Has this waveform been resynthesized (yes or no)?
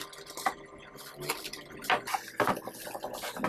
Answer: no